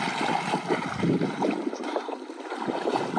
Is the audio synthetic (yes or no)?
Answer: no